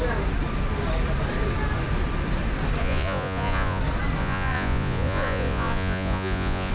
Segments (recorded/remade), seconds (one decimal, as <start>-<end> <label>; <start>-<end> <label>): 0.0-2.8 recorded; 2.8-3.8 remade; 3.8-4.2 recorded; 4.2-6.7 remade